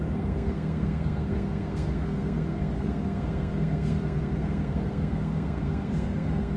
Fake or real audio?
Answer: fake